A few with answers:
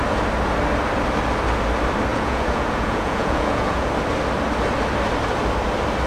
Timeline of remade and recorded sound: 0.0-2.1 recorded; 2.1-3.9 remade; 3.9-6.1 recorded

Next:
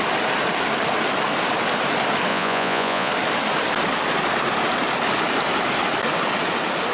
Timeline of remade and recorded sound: 0.0-2.3 recorded; 2.3-3.1 remade; 3.1-6.9 recorded

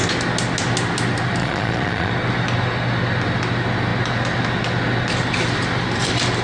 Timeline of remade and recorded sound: 0.0-1.4 recorded; 1.4-2.1 remade; 2.1-6.4 recorded